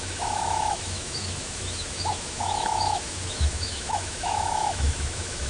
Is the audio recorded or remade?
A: remade